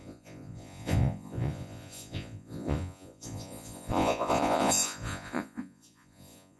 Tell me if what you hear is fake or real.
fake